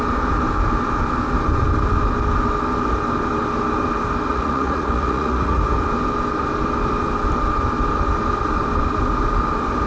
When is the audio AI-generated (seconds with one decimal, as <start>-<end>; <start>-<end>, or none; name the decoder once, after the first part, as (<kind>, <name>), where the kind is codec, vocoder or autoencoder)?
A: 4.3-5.6 (vocoder, Vocos)